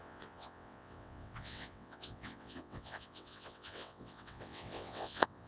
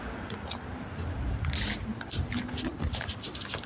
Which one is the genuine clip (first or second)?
second